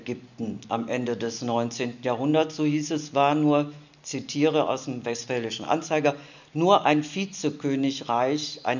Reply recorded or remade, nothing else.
recorded